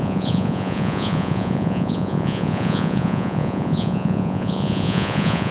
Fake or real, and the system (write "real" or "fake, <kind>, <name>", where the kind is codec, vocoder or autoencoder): fake, vocoder, Vocos